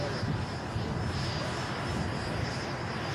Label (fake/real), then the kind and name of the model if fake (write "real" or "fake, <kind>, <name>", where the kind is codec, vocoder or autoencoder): real